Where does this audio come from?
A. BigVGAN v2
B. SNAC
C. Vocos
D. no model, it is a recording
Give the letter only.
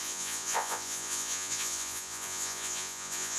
C